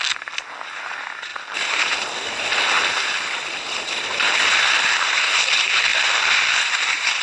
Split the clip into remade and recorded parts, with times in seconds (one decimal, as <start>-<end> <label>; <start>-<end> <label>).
0.0-1.3 recorded; 1.3-5.2 remade; 5.2-7.2 recorded